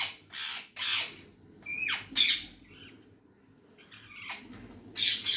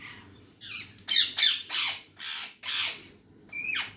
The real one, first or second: first